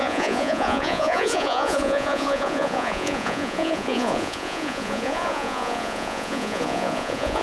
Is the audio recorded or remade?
remade